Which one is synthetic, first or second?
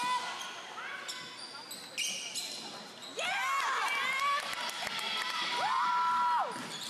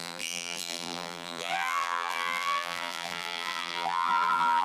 second